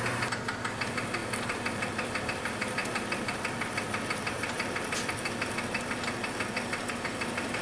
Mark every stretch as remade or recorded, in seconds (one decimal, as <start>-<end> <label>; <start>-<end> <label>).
0.0-2.8 remade; 2.8-6.9 recorded; 6.9-7.6 remade